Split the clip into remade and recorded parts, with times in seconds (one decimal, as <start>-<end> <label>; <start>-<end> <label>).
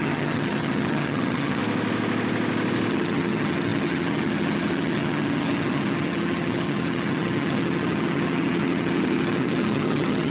0.0-1.6 remade; 1.6-2.9 recorded; 2.9-10.3 remade